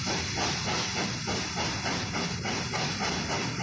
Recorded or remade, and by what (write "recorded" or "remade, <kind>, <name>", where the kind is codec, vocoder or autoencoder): recorded